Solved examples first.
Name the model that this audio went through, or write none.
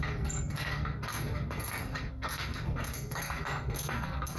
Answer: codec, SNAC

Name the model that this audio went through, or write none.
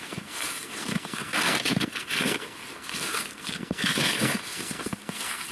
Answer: codec, SNAC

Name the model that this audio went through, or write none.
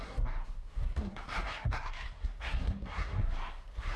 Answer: codec, SNAC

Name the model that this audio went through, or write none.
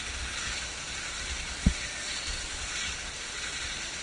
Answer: none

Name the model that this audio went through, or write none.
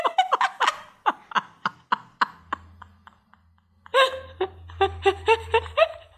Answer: none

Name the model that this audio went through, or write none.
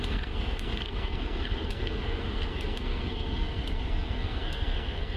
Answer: codec, SNAC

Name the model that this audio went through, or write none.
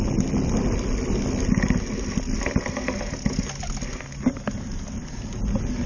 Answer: none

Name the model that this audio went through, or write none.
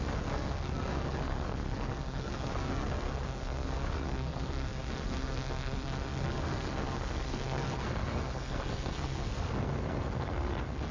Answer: codec, SNAC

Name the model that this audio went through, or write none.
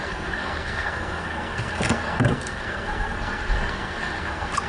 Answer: codec, SNAC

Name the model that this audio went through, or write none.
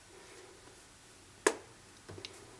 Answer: none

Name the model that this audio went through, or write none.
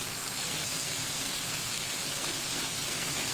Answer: codec, SNAC